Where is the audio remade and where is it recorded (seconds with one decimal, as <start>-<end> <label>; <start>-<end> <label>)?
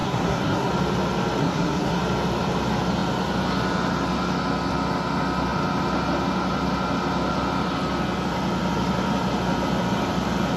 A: 0.0-0.7 remade; 0.7-1.4 recorded; 1.4-2.0 remade; 2.0-10.6 recorded